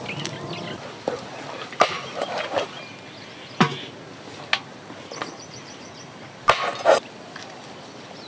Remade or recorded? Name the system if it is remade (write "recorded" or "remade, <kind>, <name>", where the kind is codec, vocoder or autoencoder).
recorded